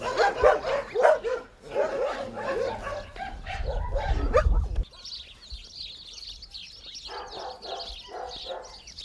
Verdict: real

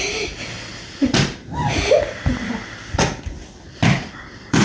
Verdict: fake